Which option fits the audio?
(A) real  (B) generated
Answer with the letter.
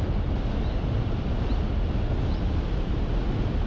A